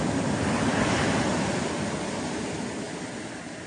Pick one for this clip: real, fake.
real